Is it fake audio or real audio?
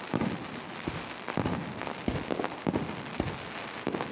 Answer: real